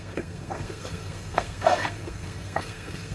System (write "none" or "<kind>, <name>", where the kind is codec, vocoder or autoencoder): codec, SNAC